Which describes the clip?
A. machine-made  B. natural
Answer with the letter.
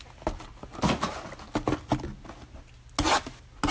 B